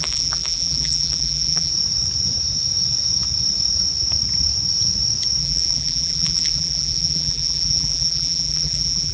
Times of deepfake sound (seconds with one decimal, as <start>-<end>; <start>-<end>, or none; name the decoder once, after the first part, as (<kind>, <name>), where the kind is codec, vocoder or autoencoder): 0.0-1.7 (vocoder, BigVGAN v2); 5.4-9.1